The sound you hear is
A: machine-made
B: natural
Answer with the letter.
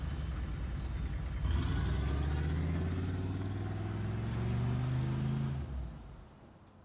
B